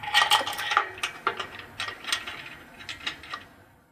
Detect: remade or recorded recorded